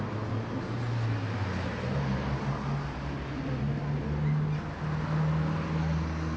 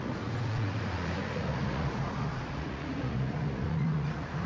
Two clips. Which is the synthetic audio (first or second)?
second